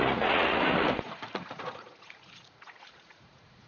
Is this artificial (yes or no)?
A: yes